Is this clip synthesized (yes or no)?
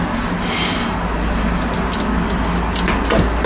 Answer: no